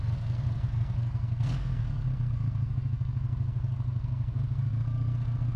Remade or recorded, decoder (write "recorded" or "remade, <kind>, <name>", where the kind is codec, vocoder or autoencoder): remade, codec, SNAC